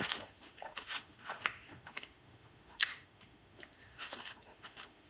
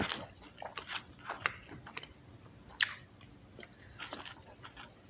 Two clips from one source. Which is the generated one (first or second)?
first